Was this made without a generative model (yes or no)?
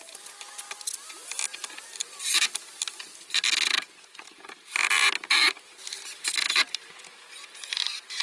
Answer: yes